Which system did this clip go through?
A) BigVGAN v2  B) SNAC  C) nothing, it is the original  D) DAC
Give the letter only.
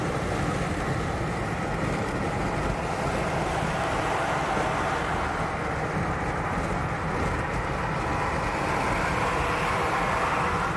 C